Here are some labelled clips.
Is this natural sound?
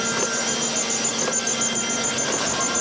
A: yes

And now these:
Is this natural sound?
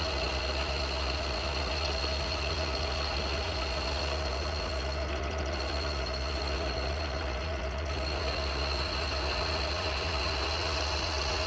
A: no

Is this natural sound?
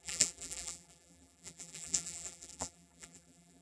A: no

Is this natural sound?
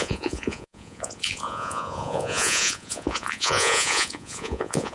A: no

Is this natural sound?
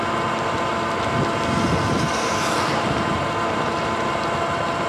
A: yes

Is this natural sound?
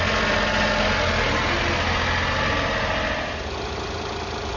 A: yes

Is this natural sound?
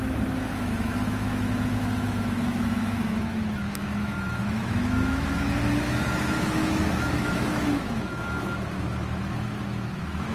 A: no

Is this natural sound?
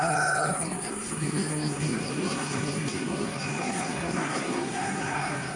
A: no